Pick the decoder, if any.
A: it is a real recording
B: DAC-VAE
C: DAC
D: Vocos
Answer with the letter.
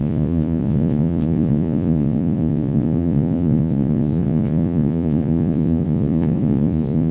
D